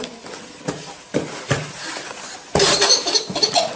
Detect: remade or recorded recorded